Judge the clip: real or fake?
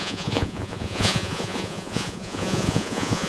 fake